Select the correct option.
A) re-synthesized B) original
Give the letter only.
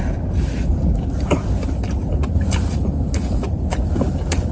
B